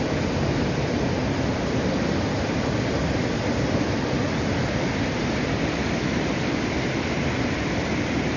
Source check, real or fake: fake